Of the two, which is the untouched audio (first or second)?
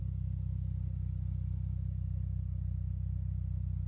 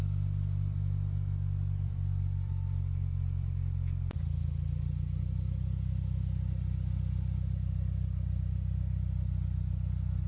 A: first